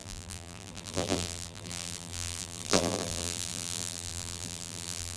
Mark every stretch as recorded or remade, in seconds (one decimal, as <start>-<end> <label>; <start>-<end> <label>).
0.0-5.2 remade